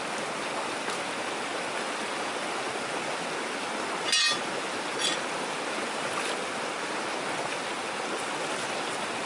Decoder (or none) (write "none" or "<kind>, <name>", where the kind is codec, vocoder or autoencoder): none